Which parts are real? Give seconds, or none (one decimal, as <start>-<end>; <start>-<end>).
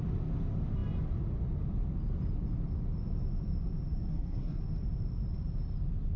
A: 0.0-4.1; 4.6-6.2